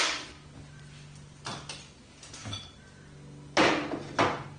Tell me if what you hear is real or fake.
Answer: real